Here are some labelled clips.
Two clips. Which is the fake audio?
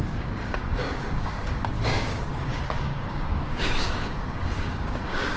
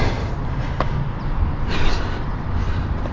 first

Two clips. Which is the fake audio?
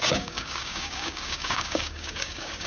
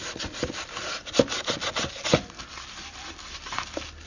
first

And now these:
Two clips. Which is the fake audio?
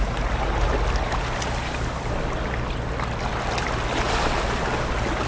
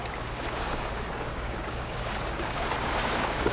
second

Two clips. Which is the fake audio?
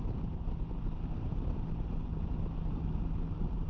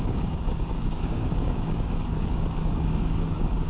second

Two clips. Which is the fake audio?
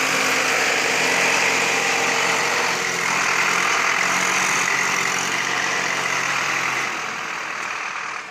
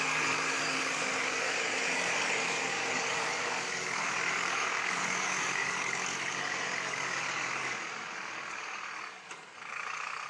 second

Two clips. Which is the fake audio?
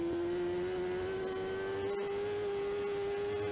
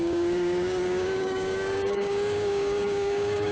second